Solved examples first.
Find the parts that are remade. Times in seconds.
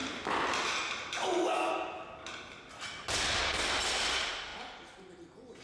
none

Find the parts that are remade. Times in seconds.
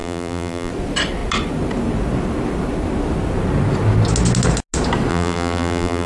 0.0-0.7 (vocoder, BigVGAN v2); 5.1-6.1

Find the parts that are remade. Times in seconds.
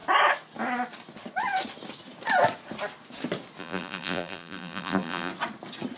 3.6-5.3 (vocoder, BigVGAN v2)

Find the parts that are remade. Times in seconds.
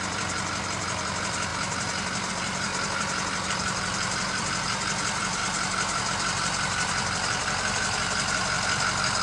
0.0-1.5 (vocoder, BigVGAN v2); 2.3-2.7; 3.5-5.4; 6.1-9.2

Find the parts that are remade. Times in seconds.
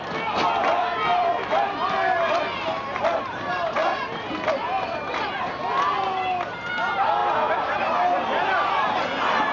3.8-5.3 (vocoder, BigVGAN v2)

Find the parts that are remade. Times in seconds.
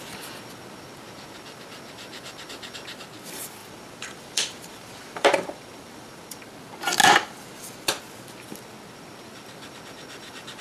3.6-6.4 (vocoder, BigVGAN v2); 7.0-8.0